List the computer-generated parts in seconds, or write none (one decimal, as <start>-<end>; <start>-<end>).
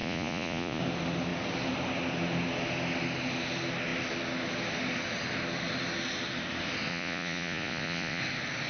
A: 0.0-0.8; 6.9-8.2